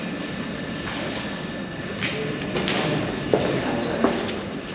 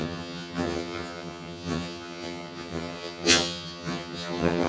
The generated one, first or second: second